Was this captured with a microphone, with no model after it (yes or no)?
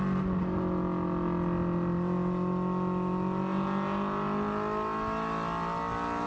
yes